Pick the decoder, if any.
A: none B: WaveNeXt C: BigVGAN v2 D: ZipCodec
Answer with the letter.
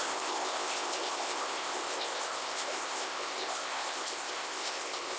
D